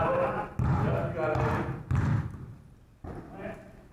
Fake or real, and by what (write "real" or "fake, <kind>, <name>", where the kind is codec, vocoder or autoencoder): real